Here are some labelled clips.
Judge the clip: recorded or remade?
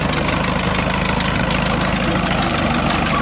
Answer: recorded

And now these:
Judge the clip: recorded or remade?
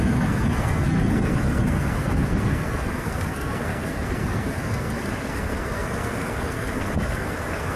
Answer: remade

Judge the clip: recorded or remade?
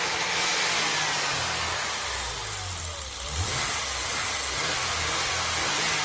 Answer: recorded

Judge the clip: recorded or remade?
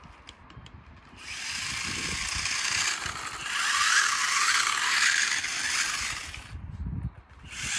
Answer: recorded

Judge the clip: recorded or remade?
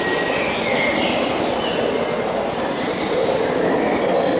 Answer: recorded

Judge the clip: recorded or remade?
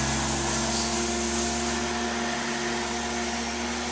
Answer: recorded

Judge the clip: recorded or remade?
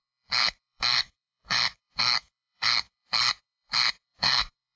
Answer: remade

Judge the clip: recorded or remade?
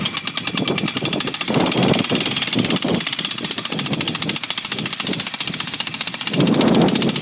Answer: recorded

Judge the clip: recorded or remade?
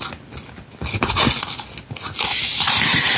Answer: recorded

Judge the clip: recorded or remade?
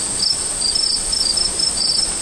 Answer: recorded